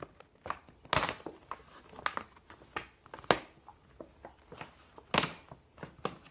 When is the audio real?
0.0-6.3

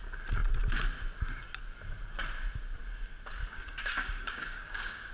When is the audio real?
0.0-3.4

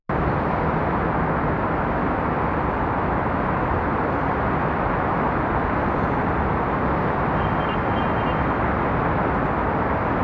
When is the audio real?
0.0-10.2

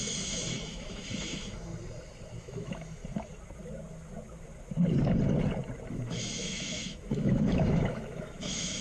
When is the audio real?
1.7-2.4; 3.0-5.9

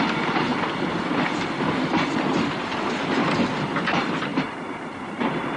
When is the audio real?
0.0-5.6

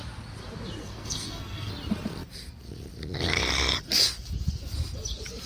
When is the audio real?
0.0-0.8; 1.7-5.5

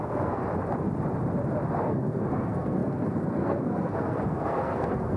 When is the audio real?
0.4-1.8